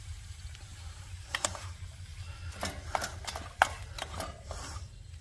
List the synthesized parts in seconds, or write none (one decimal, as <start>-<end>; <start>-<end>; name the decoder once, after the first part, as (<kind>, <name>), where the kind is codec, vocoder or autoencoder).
0.0-2.1 (vocoder, BigVGAN v2); 4.0-5.2